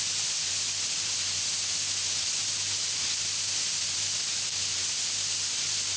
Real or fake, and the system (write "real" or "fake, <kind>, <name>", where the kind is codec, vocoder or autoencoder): real